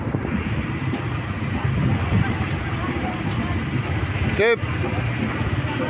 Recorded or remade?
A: recorded